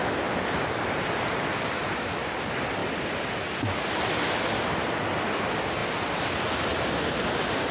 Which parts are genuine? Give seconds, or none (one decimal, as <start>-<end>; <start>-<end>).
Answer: 0.0-7.7